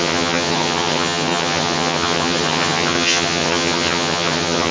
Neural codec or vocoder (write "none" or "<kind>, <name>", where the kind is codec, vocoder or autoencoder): vocoder, HiFi-GAN